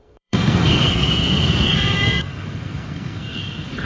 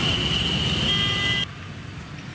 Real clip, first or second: second